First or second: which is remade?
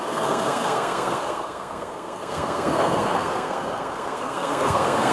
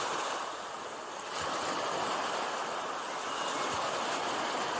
first